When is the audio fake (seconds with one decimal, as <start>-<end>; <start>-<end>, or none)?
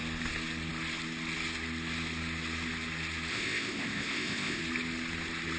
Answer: 3.3-4.6